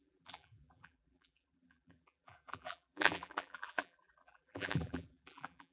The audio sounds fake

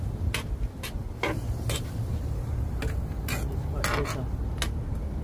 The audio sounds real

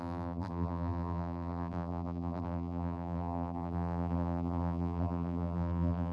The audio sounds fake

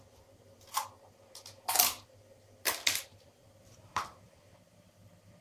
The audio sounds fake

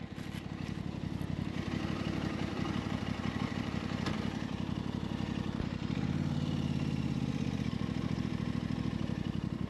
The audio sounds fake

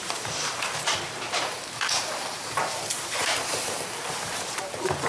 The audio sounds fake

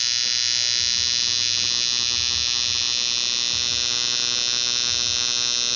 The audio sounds real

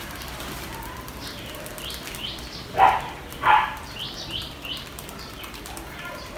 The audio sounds fake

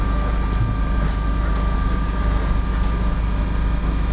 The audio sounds real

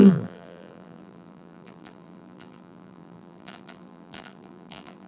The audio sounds fake